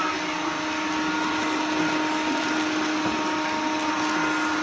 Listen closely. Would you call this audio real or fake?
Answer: real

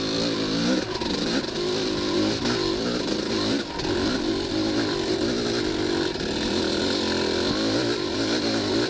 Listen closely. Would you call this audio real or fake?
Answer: real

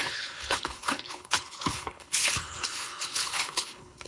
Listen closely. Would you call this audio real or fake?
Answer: fake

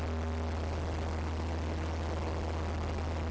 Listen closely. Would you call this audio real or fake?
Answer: real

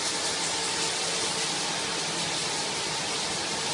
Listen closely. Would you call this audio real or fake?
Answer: real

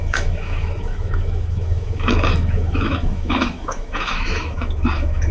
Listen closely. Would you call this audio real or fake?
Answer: fake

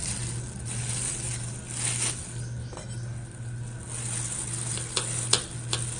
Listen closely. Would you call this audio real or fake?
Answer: real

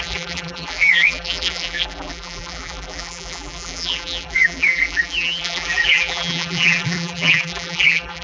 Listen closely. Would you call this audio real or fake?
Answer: fake